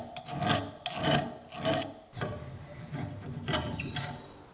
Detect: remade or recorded recorded